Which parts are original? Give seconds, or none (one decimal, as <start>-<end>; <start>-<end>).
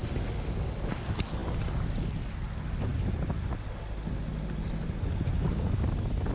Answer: 0.0-6.3